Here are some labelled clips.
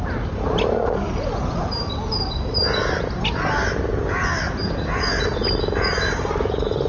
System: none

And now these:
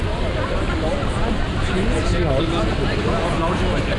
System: none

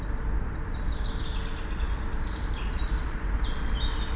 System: none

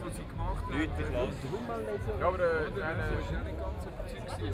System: none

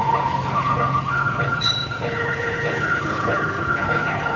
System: codec, HILCodec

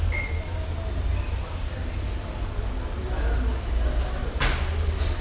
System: none